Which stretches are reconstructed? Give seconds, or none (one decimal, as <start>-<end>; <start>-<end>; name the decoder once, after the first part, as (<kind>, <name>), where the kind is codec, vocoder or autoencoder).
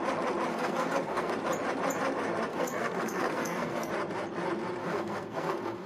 0.5-1.3 (codec, SNAC); 2.5-3.9; 4.8-5.9